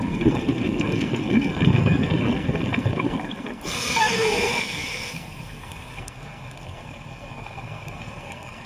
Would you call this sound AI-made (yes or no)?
yes